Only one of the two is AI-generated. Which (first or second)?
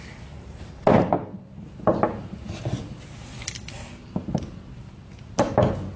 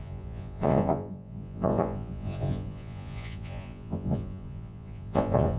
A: second